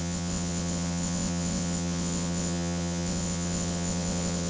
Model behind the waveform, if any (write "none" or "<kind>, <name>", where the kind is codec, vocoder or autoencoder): vocoder, WaveNeXt